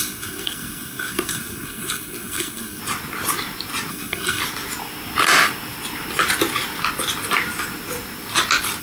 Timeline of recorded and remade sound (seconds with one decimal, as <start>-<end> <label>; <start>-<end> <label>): 0.0-2.8 remade; 2.8-3.9 recorded; 3.9-4.4 remade; 4.4-8.8 recorded